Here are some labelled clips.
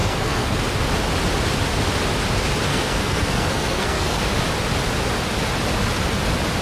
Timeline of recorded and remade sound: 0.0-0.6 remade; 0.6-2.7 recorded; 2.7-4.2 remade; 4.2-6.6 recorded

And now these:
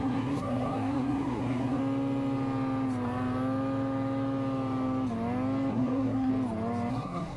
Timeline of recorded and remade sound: 0.0-1.8 remade; 1.8-5.7 recorded; 5.7-6.3 remade; 6.3-6.9 recorded; 6.9-7.4 remade

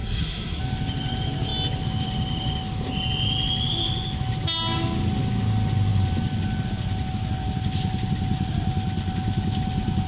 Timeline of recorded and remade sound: 0.0-0.6 remade; 0.6-10.1 recorded

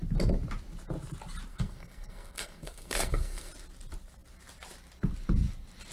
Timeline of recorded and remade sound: 0.0-1.5 recorded; 1.5-3.5 remade; 3.5-5.9 recorded

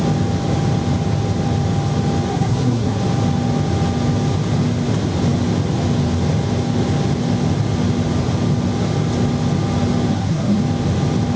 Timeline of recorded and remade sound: 0.0-2.3 recorded; 2.3-3.0 remade; 3.0-10.1 recorded; 10.1-10.6 remade; 10.6-11.4 recorded